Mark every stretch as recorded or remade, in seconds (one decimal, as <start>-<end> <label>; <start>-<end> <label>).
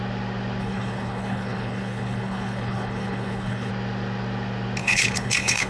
0.0-0.6 recorded; 0.6-3.7 remade; 3.7-4.8 recorded; 4.8-5.7 remade